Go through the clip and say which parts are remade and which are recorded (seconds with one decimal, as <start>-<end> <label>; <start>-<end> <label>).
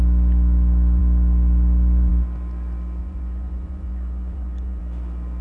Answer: 0.0-3.0 recorded; 3.0-4.8 remade; 4.8-5.4 recorded